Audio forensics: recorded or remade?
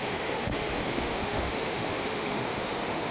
remade